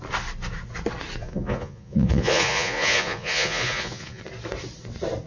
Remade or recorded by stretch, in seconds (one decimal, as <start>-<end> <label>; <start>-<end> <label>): 0.0-1.2 recorded; 1.2-4.2 remade; 4.2-5.3 recorded